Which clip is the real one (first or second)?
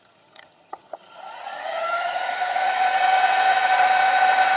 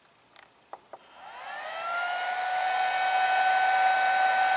second